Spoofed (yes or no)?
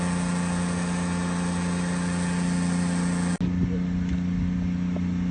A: no